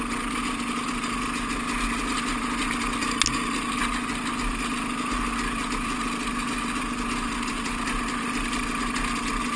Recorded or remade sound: recorded